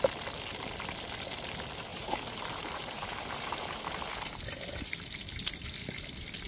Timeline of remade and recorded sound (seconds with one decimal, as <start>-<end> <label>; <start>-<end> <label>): 0.0-1.9 recorded; 1.9-3.8 remade; 3.8-6.5 recorded